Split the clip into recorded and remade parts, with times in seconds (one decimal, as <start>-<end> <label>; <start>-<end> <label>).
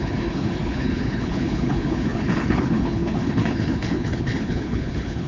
0.0-5.3 remade